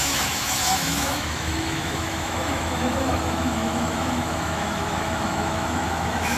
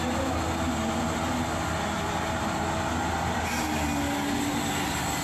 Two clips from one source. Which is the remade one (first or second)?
first